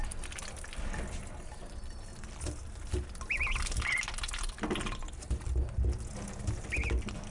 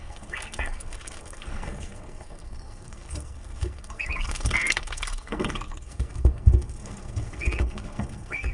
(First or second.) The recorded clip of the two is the first